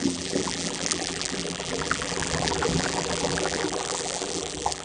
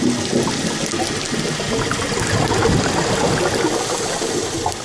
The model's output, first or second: first